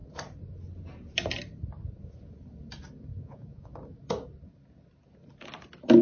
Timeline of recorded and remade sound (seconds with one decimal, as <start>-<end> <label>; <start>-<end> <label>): 0.0-3.1 recorded; 3.1-3.7 remade; 3.7-6.0 recorded